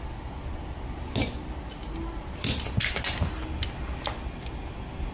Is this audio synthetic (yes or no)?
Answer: no